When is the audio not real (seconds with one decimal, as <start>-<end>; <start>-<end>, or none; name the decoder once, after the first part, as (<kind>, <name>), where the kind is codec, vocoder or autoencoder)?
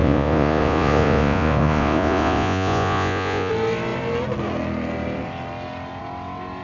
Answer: 0.0-3.5 (vocoder, Vocos)